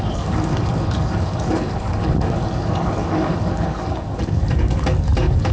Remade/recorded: remade